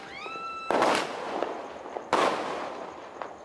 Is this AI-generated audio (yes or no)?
no